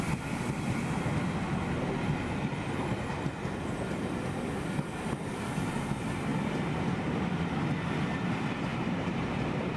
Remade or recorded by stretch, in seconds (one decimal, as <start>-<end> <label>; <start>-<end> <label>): 0.0-8.7 recorded; 8.7-9.8 remade